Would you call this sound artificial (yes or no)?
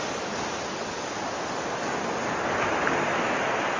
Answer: no